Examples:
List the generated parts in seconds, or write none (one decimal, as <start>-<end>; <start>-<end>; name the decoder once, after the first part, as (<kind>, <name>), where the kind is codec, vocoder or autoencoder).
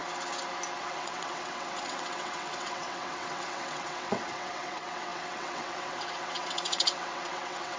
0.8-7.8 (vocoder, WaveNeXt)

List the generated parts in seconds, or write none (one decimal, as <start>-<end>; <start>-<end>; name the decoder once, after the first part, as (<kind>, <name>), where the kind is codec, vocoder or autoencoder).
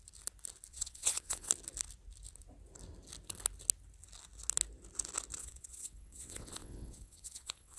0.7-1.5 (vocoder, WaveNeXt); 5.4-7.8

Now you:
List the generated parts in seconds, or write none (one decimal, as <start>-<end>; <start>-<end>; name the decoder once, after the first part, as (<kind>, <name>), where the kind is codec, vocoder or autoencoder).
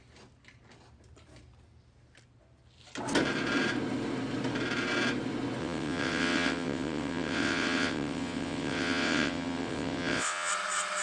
5.6-10.5 (vocoder, WaveNeXt)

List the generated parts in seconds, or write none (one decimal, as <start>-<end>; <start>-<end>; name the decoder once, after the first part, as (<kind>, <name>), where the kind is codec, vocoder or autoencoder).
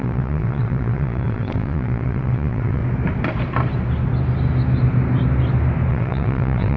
0.0-2.8 (vocoder, WaveNeXt); 5.9-6.8